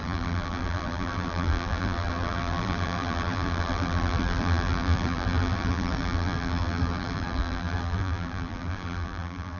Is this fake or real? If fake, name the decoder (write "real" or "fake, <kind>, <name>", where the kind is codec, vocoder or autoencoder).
fake, vocoder, BigVGAN v2